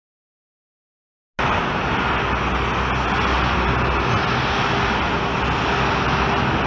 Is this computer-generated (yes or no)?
no